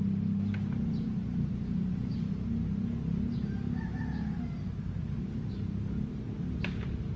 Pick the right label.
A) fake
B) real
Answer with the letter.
B